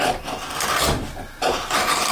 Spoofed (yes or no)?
no